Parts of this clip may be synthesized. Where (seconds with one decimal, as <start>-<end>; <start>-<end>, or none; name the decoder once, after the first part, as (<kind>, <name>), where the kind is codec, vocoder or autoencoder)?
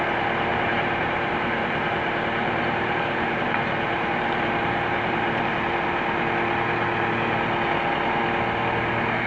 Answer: 0.5-5.7 (vocoder, BigVGAN v2)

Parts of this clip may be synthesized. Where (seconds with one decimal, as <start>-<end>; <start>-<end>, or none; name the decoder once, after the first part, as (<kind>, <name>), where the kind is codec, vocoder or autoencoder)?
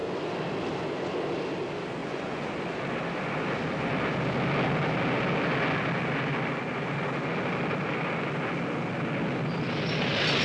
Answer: 2.0-2.5 (vocoder, Vocos)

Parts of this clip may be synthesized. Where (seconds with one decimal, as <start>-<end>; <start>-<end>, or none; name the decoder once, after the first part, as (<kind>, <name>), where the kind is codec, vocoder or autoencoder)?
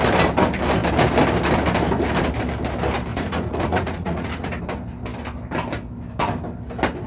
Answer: 3.1-4.6 (vocoder, Vocos)